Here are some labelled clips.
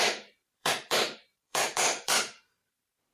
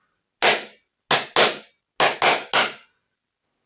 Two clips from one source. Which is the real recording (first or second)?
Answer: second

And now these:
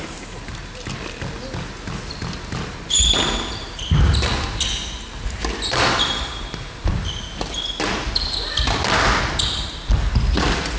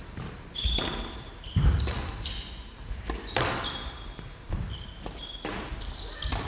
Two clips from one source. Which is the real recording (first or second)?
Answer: first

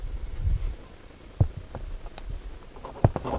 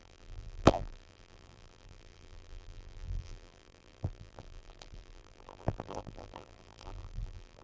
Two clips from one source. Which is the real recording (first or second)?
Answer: first